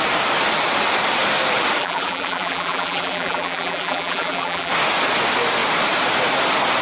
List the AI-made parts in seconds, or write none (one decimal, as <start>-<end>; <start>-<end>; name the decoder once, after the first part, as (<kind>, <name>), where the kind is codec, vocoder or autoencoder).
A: 1.8-4.7 (vocoder, BigVGAN v2)